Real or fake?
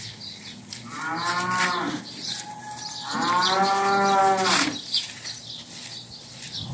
real